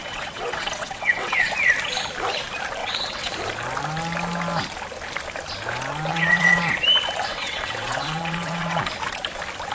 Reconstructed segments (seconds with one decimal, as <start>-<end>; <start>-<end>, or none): 0.0-1.5; 2.8-3.3; 6.1-6.6; 7.3-8.9